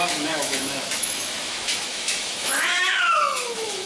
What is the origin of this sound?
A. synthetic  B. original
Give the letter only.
A